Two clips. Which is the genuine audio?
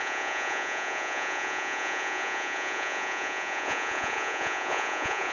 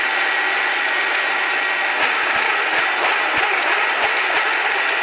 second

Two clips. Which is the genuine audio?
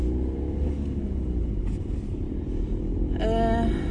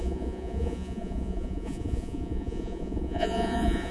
first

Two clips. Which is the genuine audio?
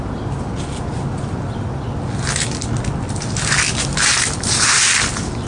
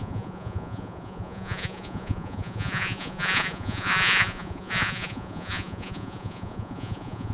first